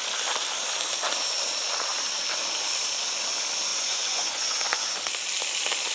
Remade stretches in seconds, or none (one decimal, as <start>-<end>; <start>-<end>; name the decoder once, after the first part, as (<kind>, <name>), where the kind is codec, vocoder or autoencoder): 3.7-4.9 (vocoder, Vocos)